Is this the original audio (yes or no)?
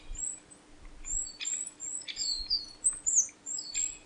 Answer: yes